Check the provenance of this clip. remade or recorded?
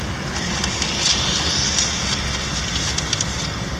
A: recorded